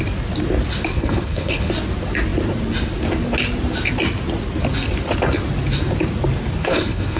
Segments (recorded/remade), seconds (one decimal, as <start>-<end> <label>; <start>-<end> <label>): 0.0-0.9 recorded; 0.9-1.7 remade; 1.7-6.6 recorded; 6.6-7.2 remade